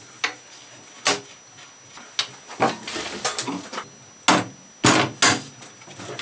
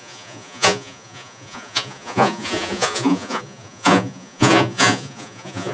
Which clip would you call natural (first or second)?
first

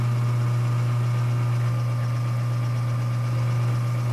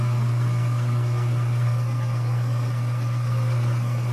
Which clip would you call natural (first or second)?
first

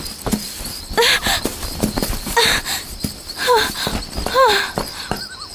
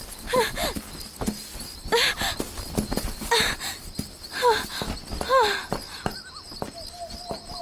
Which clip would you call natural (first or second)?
second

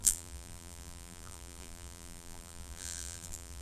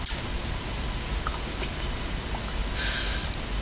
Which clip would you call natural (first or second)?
second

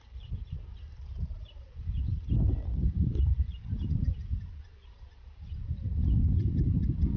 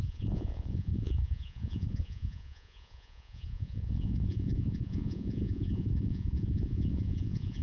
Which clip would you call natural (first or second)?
first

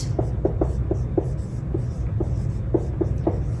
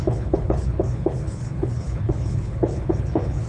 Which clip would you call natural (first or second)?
first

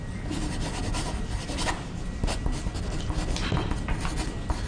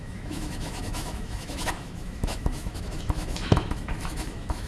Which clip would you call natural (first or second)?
first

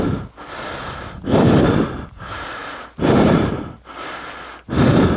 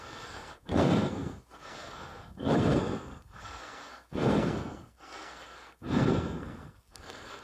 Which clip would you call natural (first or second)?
first